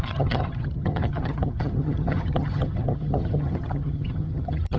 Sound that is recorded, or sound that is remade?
remade